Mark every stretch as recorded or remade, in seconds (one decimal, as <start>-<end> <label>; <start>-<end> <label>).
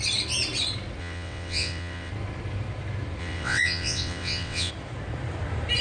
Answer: 0.0-1.0 recorded; 1.0-2.1 remade; 2.1-3.2 recorded; 3.2-4.7 remade; 4.7-5.8 recorded